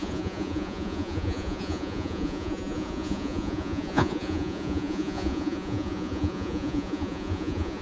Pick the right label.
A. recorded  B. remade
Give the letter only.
B